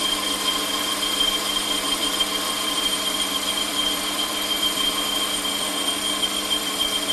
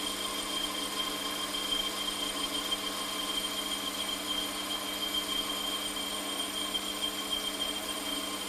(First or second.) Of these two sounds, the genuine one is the second